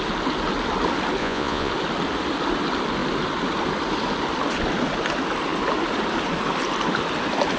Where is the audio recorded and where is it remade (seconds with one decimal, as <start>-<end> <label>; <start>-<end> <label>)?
0.0-1.2 recorded; 1.2-1.7 remade; 1.7-7.6 recorded